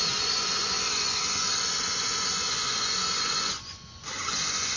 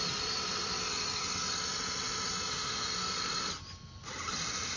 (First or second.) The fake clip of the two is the first